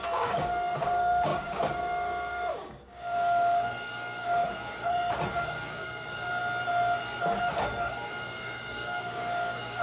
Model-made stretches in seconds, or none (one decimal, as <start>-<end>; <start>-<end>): 0.0-4.4; 5.3-6.4; 7.4-9.8